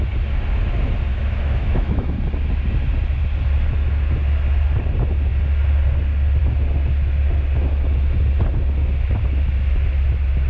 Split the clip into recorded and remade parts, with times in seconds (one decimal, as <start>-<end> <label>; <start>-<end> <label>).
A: 0.0-1.1 recorded; 1.1-2.1 remade; 2.1-10.5 recorded